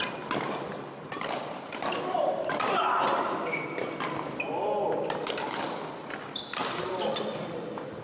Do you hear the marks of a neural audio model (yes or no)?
yes